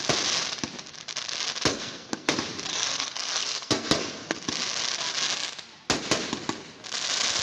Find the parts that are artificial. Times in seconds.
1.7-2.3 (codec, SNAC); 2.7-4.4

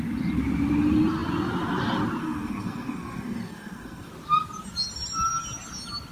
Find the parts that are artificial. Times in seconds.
2.2-4.1 (codec, SNAC)